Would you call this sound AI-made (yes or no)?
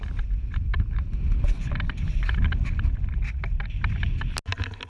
no